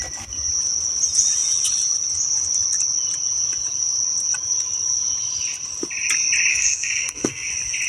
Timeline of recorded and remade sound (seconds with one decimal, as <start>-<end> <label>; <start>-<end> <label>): 0.0-6.5 recorded; 6.5-7.5 remade; 7.5-7.9 recorded